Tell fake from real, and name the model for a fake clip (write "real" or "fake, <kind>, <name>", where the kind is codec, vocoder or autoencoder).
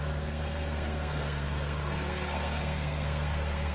fake, codec, SNAC